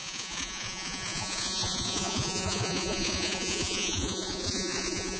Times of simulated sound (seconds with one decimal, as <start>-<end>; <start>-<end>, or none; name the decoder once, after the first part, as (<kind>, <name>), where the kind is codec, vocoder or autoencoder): 0.0-5.2 (vocoder, Vocos)